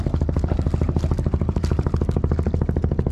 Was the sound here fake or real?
real